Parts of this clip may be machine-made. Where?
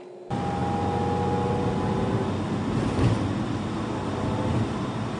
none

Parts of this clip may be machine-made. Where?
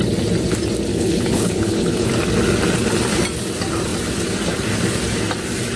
0.9-2.1 (codec, HILCodec)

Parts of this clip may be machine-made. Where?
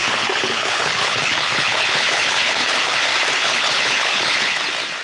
0.0-3.0 (codec, HILCodec); 3.4-4.6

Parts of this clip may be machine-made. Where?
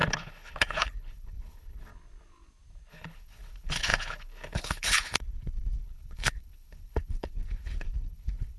0.0-1.9 (codec, HILCodec); 2.9-8.6